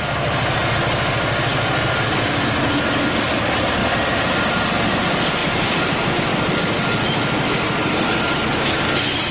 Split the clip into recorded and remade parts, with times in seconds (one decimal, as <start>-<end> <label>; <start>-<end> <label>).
0.0-9.3 recorded